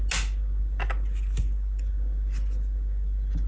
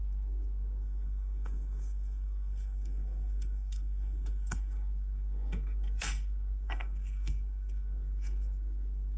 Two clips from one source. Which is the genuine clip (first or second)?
first